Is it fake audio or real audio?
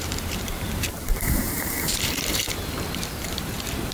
fake